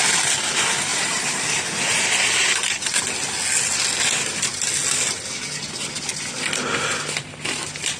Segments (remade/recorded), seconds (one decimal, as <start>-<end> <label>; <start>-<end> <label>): 0.0-0.9 recorded; 0.9-3.0 remade; 3.0-8.0 recorded